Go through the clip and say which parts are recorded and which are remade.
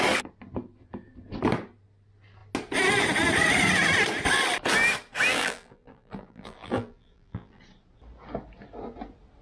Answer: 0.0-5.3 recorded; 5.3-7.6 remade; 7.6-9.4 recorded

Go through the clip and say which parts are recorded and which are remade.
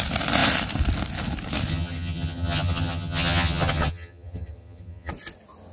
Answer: 0.0-1.7 recorded; 1.7-5.1 remade; 5.1-5.7 recorded